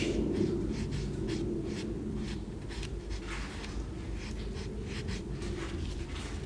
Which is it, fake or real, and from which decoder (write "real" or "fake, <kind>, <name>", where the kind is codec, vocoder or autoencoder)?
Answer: real